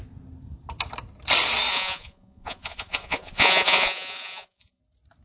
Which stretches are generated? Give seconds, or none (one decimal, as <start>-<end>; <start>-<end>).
1.7-4.8